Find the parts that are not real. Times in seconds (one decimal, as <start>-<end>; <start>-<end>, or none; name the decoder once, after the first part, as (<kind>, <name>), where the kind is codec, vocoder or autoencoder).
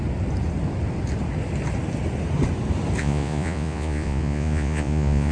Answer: 3.0-5.3 (vocoder, Vocos)